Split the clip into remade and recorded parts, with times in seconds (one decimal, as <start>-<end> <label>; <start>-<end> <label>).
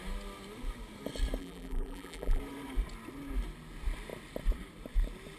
0.0-1.4 recorded; 1.4-2.4 remade; 2.4-5.4 recorded